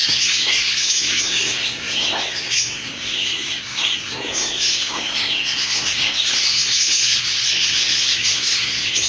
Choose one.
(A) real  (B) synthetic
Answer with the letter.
B